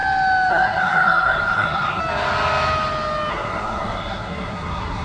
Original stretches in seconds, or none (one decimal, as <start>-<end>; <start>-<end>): 0.0-0.5; 2.0-3.3